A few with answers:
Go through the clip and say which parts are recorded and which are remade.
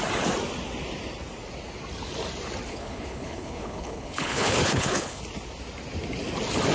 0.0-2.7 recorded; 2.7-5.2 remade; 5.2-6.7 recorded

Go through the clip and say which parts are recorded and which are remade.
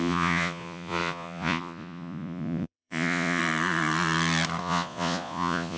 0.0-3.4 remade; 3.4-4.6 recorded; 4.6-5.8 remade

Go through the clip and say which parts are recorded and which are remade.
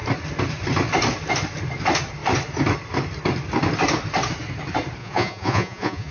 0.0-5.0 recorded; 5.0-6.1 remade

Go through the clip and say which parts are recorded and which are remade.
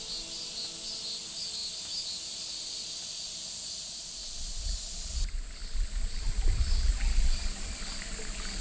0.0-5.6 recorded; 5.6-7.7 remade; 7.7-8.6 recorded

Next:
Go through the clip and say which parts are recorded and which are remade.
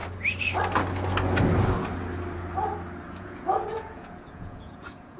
0.0-3.1 recorded; 3.1-5.2 remade